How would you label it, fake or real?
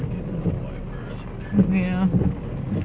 real